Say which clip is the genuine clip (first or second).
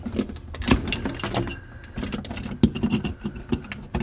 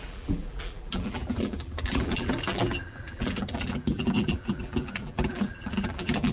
first